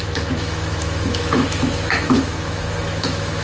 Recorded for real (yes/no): no